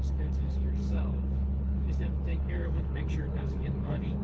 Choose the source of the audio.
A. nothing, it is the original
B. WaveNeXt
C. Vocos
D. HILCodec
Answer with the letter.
D